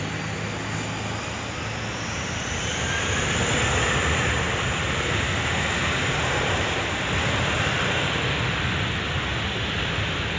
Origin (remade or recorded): recorded